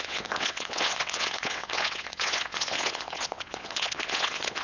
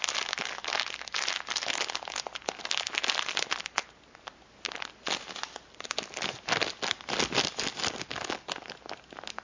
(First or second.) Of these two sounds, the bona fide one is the second